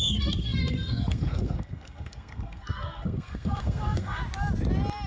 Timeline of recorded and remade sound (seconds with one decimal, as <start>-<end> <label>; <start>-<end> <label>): 0.0-4.2 remade; 4.2-5.1 recorded